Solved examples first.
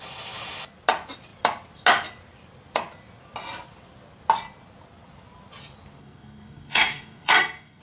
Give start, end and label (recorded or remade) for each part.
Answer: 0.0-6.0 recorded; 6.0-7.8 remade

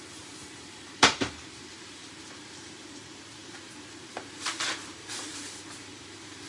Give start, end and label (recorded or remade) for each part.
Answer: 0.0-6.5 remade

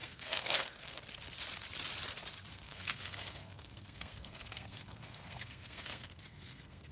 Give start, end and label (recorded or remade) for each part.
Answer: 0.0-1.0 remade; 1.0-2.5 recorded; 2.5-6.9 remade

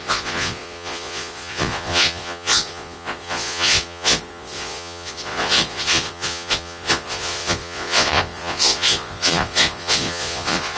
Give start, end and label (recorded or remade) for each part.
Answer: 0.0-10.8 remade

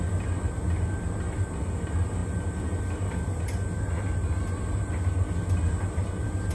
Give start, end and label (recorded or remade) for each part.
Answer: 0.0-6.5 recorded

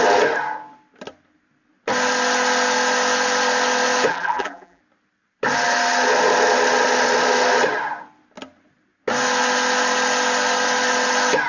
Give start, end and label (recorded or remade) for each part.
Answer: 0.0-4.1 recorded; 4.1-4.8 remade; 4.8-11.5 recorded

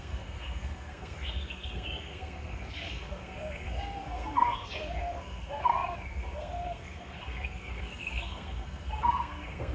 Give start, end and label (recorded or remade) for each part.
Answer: 0.0-9.7 remade

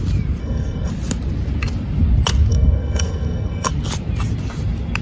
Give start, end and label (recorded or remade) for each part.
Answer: 0.0-0.4 recorded; 0.4-0.9 remade; 0.9-2.5 recorded; 2.5-3.7 remade; 3.7-5.0 recorded